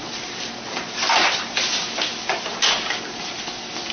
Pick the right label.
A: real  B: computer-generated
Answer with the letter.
A